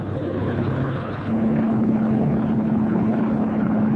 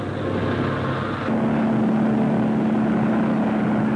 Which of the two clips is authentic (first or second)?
second